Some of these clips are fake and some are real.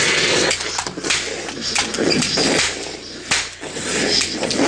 real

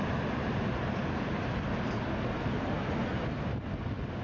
real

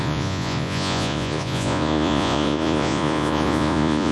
fake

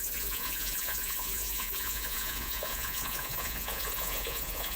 fake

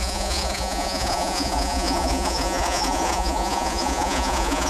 fake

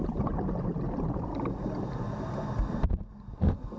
real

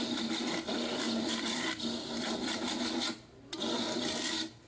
real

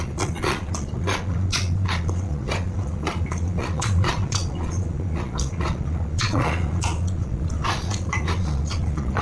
fake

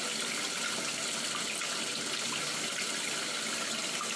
real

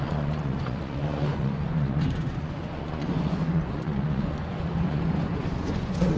fake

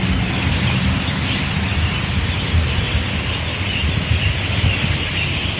real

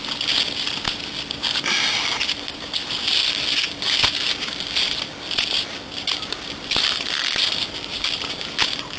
real